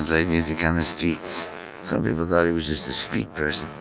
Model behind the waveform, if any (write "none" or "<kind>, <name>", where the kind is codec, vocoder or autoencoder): vocoder, Vocos